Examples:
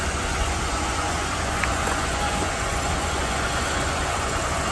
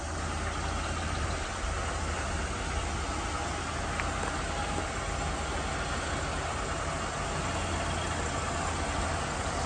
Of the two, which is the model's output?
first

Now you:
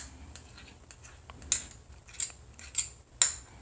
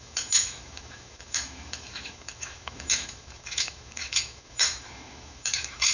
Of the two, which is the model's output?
second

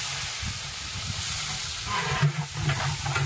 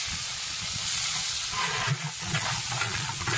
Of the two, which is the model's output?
second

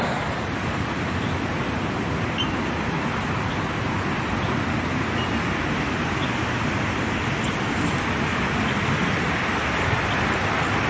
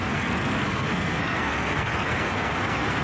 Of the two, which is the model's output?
second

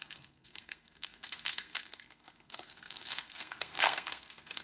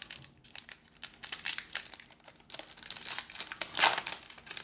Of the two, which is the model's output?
first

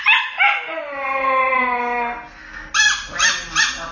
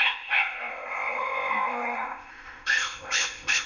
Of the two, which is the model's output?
second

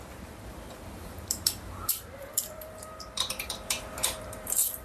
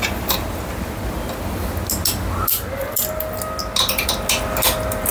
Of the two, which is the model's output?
first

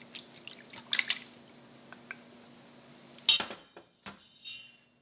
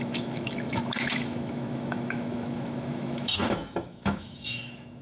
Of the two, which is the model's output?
second